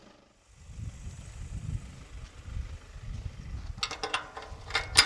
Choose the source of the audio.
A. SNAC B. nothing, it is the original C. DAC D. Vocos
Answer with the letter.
B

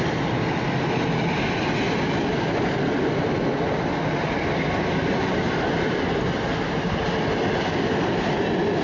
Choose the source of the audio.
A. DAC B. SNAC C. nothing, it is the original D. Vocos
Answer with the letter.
C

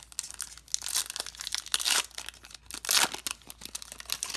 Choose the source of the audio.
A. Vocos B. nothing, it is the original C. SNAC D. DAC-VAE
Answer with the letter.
B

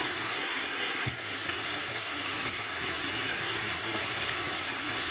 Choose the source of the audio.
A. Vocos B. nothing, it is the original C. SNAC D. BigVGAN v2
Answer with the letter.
C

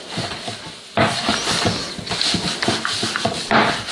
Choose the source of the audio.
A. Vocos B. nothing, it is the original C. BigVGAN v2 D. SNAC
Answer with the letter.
B